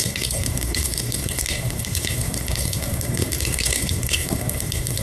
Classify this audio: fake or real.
fake